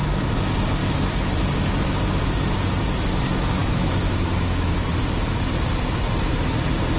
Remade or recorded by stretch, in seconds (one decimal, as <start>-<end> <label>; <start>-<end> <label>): 0.0-3.6 recorded; 3.6-4.9 remade; 4.9-7.0 recorded